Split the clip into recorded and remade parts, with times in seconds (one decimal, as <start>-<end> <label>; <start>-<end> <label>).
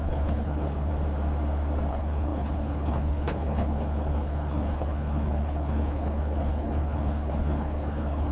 0.0-0.9 remade; 0.9-1.9 recorded; 1.9-8.3 remade